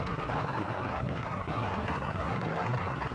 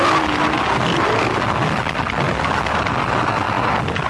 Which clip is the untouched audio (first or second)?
second